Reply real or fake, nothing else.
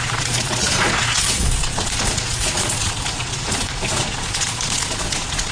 fake